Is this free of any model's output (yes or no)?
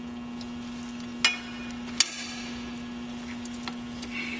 yes